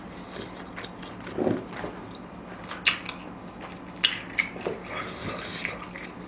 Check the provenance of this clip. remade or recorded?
recorded